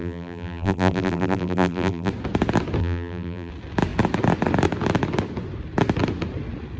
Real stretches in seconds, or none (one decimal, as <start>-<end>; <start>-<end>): 2.1-2.8; 3.5-6.8